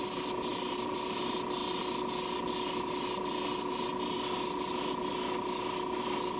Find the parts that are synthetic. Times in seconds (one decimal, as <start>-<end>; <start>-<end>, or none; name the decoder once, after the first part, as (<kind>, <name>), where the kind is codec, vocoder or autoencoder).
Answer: 0.5-1.2 (vocoder, BigVGAN v2)